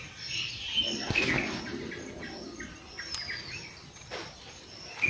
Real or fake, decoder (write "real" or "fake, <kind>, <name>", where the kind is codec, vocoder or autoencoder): real